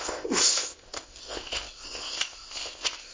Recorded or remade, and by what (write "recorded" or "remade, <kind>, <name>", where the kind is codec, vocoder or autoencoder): remade, codec, ZipCodec